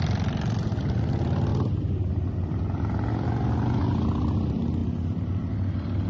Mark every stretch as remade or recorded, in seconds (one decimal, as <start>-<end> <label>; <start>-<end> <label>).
0.0-6.1 recorded